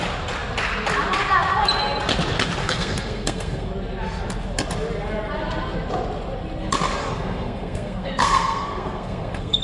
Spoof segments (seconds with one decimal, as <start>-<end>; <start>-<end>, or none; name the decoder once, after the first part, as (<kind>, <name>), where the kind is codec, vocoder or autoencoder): 2.6-3.7 (codec, SNAC); 7.0-9.6